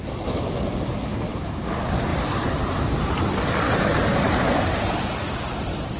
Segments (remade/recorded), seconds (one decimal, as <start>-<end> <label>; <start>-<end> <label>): 0.0-6.0 recorded